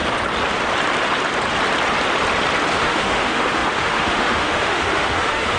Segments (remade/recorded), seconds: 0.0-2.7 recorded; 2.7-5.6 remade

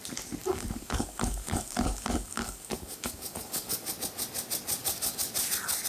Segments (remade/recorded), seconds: 0.0-0.4 recorded; 0.4-3.9 remade; 3.9-4.8 recorded; 4.8-5.3 remade; 5.3-5.9 recorded

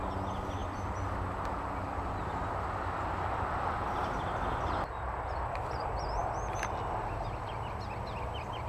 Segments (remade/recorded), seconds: 0.0-8.7 recorded

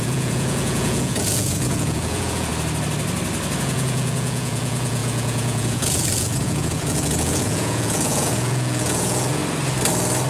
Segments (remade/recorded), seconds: 0.0-2.5 remade; 2.5-3.6 recorded; 3.6-9.4 remade; 9.4-10.3 recorded

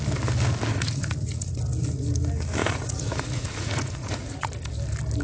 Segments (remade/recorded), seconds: 0.0-0.7 recorded; 0.7-1.5 remade; 1.5-2.6 recorded; 2.6-4.5 remade; 4.5-5.2 recorded

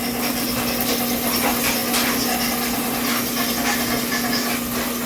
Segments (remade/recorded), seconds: 0.0-5.1 recorded